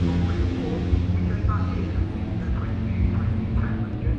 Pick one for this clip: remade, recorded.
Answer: recorded